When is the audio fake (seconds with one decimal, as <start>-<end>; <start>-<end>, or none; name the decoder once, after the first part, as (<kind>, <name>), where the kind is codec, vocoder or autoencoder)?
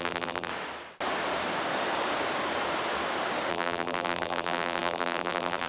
0.0-0.5 (vocoder, BigVGAN v2); 3.5-5.7